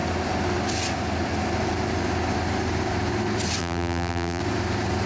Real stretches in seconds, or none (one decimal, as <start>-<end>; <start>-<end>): 0.0-3.6; 4.4-5.1